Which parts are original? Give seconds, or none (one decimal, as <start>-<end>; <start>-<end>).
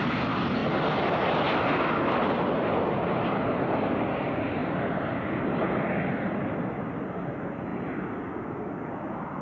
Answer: 0.0-9.4